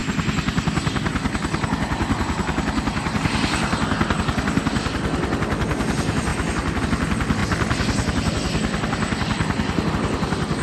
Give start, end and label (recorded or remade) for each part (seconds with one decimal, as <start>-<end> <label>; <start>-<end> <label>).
0.0-10.6 recorded